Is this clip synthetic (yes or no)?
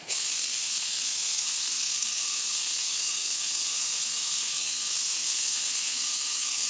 yes